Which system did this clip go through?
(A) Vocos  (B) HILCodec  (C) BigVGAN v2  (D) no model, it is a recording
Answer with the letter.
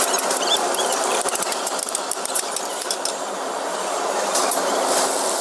C